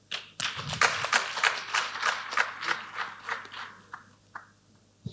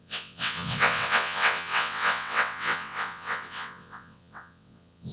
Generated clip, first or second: second